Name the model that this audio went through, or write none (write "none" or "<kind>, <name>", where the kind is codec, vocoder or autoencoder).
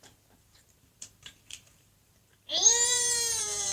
vocoder, BigVGAN v2